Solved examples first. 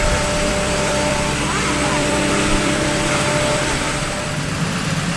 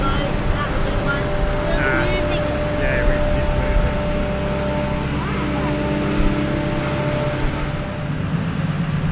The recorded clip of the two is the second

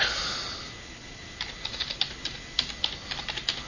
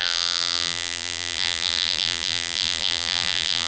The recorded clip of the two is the first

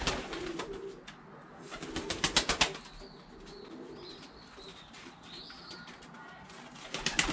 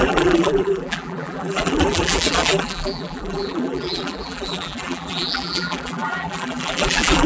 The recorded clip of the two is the first